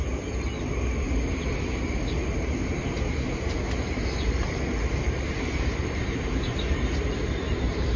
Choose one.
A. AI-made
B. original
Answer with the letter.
A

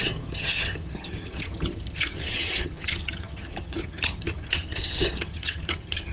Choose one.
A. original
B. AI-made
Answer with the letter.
B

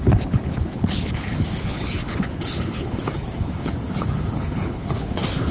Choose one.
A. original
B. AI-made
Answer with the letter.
B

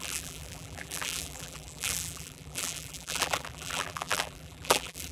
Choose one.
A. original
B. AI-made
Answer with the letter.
B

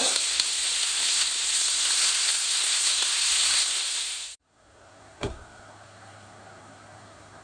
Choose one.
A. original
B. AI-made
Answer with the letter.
B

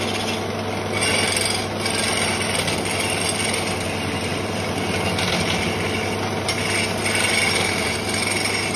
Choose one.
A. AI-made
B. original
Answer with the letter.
B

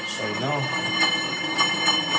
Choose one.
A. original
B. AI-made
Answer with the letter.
A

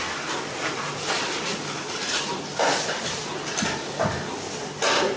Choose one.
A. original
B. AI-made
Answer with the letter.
A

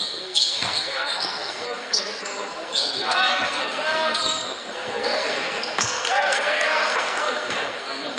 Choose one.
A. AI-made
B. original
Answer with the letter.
A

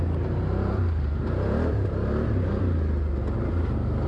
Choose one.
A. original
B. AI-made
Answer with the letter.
A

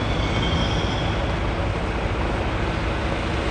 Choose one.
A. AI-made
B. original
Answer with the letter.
B